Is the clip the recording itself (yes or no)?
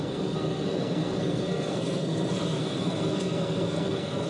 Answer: no